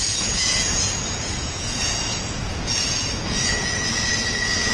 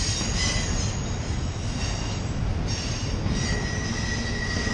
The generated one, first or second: first